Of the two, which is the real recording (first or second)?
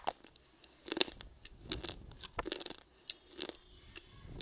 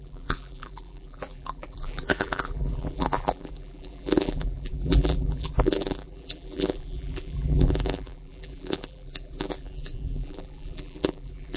first